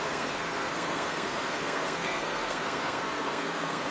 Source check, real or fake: fake